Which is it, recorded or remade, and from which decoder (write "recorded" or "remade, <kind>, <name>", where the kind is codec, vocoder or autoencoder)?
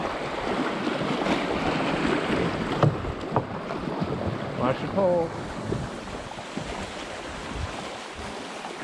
recorded